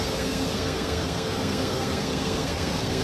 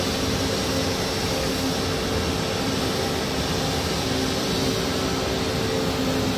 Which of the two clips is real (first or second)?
second